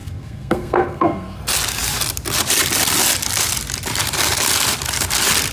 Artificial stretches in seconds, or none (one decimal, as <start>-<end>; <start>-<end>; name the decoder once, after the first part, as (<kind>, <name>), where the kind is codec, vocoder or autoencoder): 0.0-1.4 (codec, SNAC)